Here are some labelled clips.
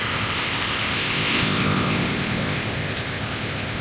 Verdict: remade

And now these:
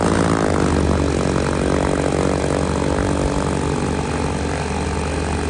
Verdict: recorded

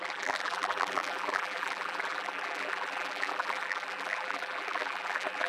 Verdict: remade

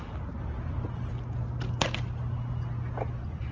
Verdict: recorded